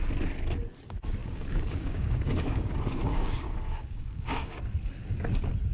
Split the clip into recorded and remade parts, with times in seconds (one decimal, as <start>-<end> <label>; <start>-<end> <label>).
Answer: 0.0-1.2 recorded; 1.2-4.6 remade; 4.6-5.7 recorded